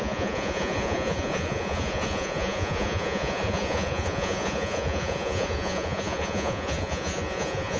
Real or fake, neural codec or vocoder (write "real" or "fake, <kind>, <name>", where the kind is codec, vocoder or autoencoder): fake, vocoder, Vocos